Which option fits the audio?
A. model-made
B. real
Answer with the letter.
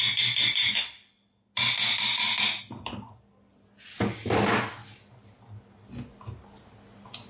B